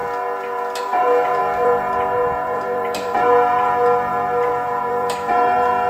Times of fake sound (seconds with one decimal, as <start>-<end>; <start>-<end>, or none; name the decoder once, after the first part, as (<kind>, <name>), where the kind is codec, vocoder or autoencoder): 0.8-5.9 (vocoder, BigVGAN v2)